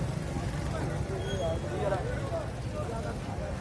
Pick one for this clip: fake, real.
real